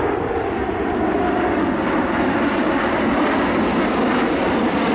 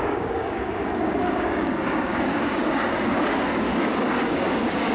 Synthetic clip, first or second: second